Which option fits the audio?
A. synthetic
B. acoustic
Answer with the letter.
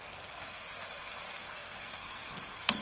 A